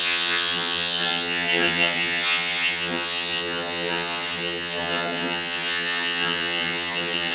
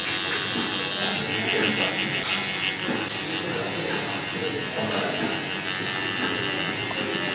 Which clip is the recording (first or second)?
second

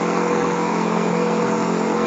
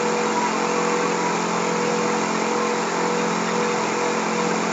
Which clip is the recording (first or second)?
second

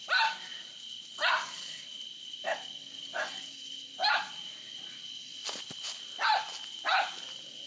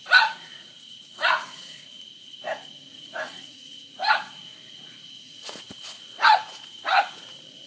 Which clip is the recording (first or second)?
first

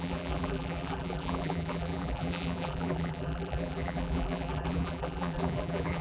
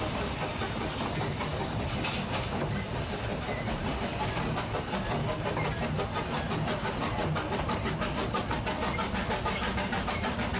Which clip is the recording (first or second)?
second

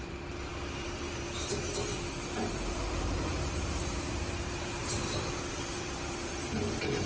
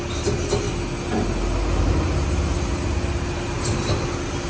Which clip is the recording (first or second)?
second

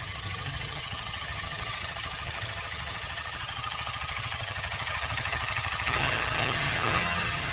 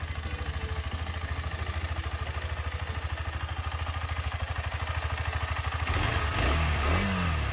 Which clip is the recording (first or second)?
second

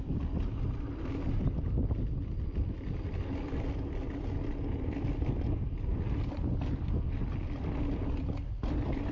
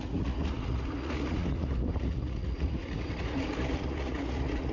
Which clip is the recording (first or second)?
first